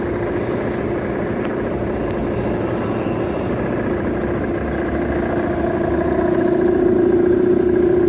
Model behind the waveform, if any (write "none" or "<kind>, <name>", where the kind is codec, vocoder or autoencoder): none